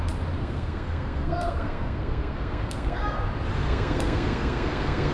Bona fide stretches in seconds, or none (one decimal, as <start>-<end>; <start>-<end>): 0.0-0.4; 3.2-3.6